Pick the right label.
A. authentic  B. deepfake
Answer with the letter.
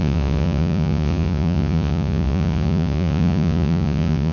B